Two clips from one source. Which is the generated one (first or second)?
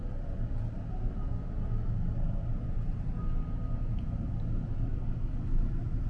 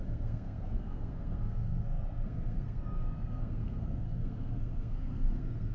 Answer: second